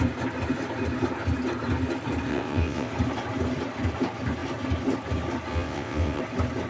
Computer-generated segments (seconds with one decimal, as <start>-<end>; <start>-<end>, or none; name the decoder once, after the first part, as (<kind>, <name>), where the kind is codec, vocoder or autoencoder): 2.3-2.9 (vocoder, WaveNeXt); 5.5-6.2

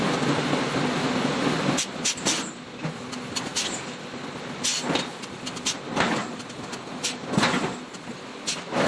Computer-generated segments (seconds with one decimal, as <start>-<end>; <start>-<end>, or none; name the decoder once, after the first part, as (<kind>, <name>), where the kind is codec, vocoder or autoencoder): none

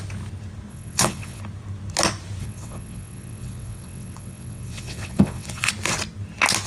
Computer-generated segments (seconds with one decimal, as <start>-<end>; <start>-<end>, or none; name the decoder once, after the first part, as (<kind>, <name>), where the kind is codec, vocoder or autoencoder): 0.7-1.4 (vocoder, WaveNeXt); 2.4-5.7